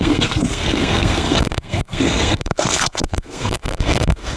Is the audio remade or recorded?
remade